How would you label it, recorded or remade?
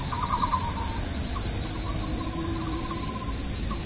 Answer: remade